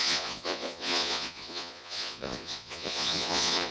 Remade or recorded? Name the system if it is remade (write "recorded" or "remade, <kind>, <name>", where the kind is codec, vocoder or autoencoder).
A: remade, vocoder, Vocos